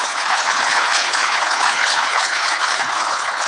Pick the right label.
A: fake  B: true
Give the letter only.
A